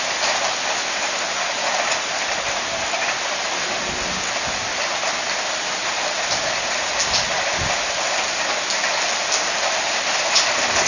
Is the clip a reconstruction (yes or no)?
no